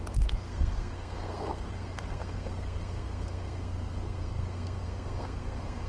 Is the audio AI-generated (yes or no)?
yes